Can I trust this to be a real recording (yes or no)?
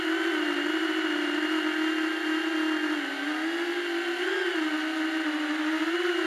yes